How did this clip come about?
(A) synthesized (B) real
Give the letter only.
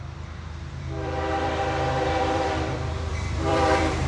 A